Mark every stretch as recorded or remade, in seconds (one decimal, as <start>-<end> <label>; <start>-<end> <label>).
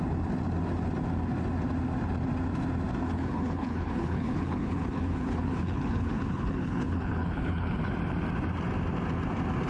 0.0-3.0 recorded; 3.0-7.9 remade; 7.9-9.7 recorded